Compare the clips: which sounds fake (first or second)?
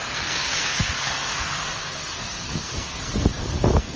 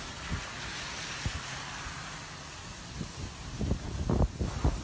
first